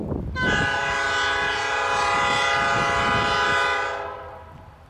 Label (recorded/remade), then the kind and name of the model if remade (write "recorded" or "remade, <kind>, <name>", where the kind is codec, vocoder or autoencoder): recorded